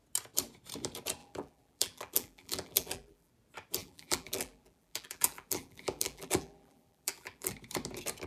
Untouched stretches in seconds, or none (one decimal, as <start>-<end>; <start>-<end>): 0.0-1.2; 3.3-3.8; 7.5-8.3